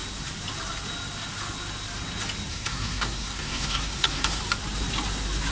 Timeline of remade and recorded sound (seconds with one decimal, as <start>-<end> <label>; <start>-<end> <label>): 0.0-2.5 recorded; 2.5-4.4 remade; 4.4-5.5 recorded